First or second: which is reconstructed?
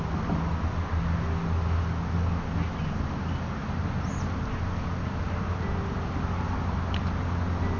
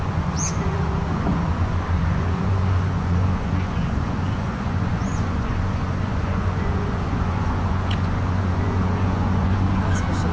second